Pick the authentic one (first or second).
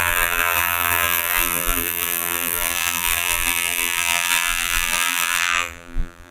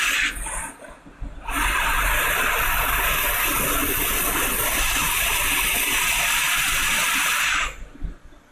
second